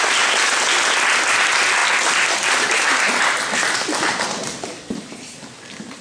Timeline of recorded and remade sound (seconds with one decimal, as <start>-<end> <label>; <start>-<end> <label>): 0.0-6.0 recorded